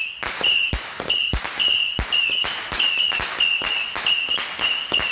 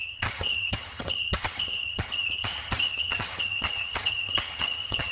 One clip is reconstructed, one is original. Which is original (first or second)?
first